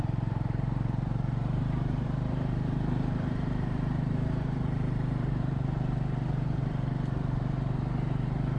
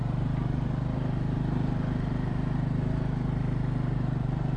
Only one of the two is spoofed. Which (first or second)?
first